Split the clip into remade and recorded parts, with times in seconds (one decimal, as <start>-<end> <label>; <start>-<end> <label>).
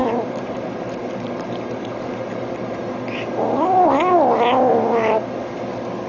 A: 0.0-2.9 remade; 2.9-6.1 recorded